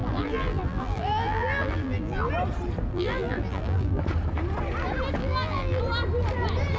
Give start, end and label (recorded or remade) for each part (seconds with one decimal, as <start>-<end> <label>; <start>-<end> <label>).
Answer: 0.0-2.3 remade; 2.3-2.9 recorded; 2.9-4.0 remade; 4.0-5.2 recorded; 5.2-5.8 remade; 5.8-6.8 recorded